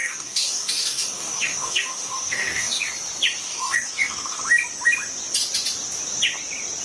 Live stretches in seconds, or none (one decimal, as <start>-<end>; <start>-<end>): 2.8-3.4; 4.4-6.8